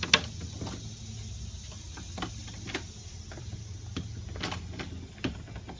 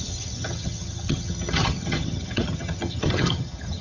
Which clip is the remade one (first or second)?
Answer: second